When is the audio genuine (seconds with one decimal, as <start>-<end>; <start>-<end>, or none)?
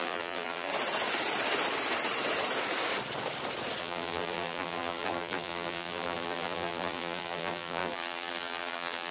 0.7-3.8